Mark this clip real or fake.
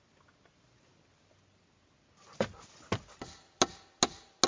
real